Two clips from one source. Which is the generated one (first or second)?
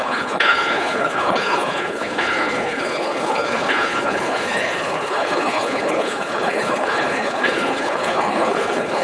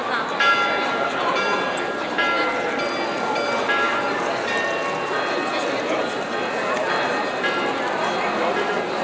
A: first